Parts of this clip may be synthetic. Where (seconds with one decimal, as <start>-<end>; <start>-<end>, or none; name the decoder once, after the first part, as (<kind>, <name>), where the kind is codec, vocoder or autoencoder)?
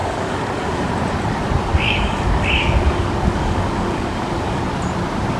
0.0-0.9 (codec, DAC); 1.7-4.6